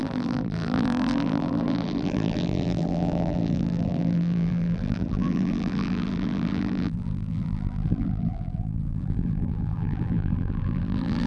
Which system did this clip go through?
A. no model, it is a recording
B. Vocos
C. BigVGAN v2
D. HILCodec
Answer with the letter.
C